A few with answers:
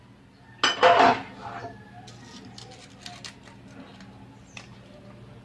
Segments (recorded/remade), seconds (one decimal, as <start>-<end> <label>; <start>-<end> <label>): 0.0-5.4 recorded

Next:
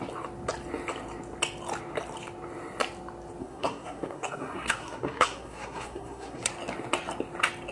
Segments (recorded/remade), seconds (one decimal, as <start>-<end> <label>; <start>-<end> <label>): 0.0-3.4 recorded; 3.4-6.5 remade; 6.5-7.7 recorded

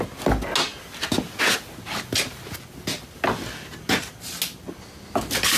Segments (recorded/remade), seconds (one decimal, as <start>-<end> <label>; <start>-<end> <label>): 0.0-5.6 recorded

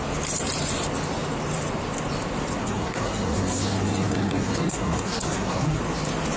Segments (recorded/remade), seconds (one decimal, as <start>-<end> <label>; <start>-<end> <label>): 0.0-2.6 recorded; 2.6-5.8 remade; 5.8-6.4 recorded

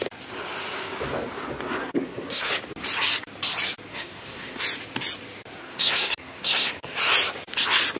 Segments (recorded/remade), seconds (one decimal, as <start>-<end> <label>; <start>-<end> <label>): 0.0-1.8 recorded; 1.8-2.5 remade; 2.5-3.9 recorded; 3.9-4.6 remade; 4.6-5.6 recorded; 5.6-7.0 remade; 7.0-8.0 recorded